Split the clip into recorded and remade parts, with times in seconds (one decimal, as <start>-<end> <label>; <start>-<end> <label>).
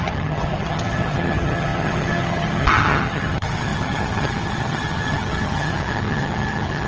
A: 0.0-6.9 remade